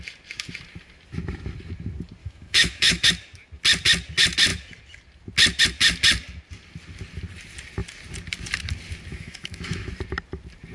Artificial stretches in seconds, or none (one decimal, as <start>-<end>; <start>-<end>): 2.2-3.1; 9.1-9.9